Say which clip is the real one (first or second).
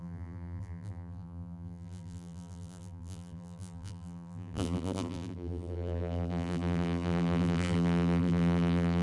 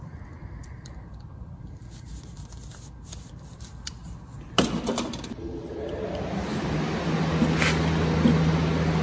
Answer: second